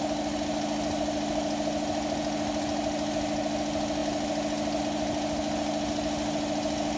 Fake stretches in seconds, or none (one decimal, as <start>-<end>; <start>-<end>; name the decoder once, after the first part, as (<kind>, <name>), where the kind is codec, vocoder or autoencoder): none